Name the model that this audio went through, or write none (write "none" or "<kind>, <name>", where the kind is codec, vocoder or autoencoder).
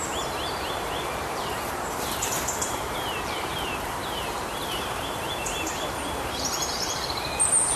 vocoder, BigVGAN v2